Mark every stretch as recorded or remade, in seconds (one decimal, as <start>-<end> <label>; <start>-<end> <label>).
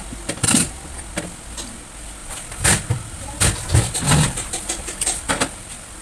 0.0-2.2 recorded; 2.2-6.0 remade